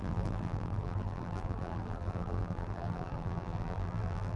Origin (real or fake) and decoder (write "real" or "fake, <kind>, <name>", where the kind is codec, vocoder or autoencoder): fake, vocoder, BigVGAN v2